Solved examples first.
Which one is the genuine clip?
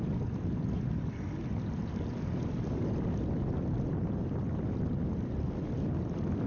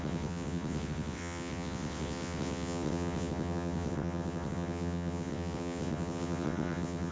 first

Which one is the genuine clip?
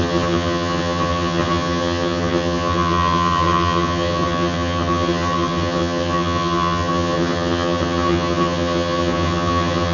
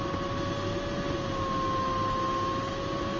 second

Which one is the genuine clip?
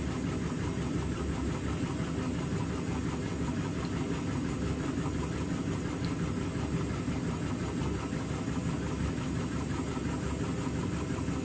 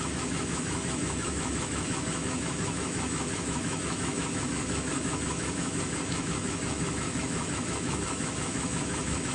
first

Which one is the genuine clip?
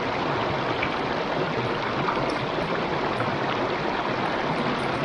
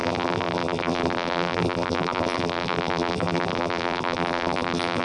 first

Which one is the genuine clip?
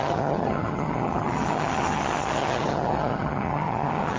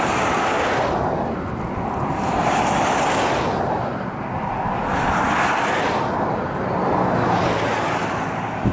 second